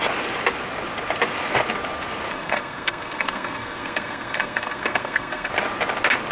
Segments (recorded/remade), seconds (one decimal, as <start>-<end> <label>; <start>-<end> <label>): 0.0-2.3 recorded; 2.3-5.5 remade; 5.5-6.3 recorded